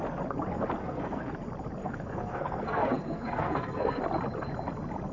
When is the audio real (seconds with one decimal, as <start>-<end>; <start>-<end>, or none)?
0.0-0.8; 1.3-1.8; 4.0-5.1